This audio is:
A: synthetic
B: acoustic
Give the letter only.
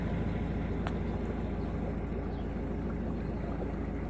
B